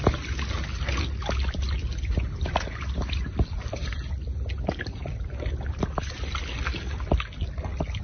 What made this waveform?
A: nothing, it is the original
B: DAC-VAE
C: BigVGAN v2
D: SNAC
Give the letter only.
A